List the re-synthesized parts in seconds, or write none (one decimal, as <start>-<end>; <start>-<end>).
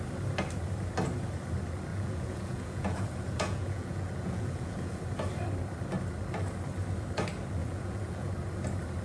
1.9-5.0; 7.6-8.3